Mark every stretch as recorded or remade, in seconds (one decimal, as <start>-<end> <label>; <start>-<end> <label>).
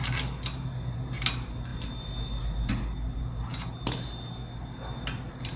0.0-5.6 recorded